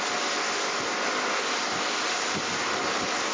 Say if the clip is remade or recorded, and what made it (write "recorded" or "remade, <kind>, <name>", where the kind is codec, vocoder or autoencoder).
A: recorded